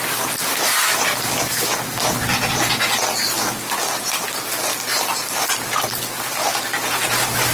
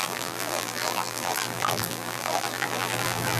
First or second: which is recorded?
first